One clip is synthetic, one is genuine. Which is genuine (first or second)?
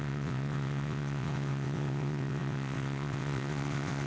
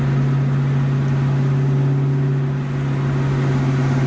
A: second